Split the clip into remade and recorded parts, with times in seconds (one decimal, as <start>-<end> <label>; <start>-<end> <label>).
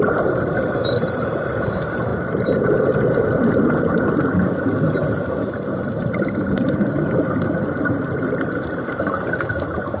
0.0-2.1 remade; 2.1-5.5 recorded; 5.5-10.0 remade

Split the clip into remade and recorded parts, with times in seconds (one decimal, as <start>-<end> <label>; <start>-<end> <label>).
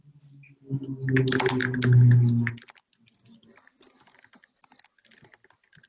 0.0-5.9 recorded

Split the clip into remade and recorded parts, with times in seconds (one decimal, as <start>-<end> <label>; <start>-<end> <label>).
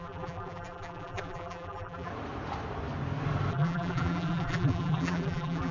0.0-2.1 remade; 2.1-3.5 recorded; 3.5-5.7 remade